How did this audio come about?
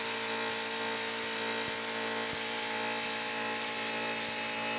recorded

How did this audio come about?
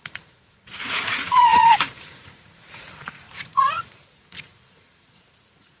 remade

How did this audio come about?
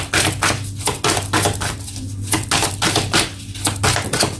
recorded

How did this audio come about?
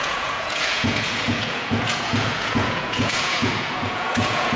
remade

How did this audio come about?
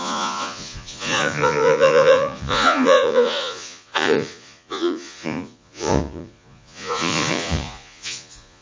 remade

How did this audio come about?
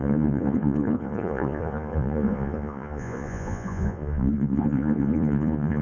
remade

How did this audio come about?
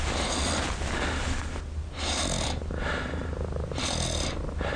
recorded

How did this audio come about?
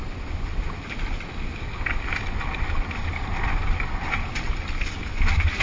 recorded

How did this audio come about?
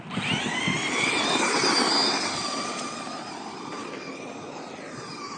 recorded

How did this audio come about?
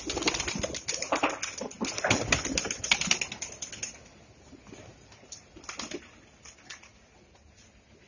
recorded